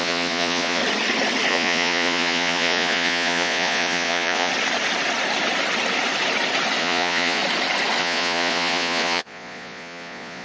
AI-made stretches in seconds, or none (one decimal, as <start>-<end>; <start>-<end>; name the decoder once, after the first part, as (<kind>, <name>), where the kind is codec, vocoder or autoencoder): 0.0-0.8 (vocoder, Vocos); 1.5-4.5; 6.8-7.4; 8.0-10.4